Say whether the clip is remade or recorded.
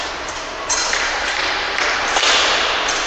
remade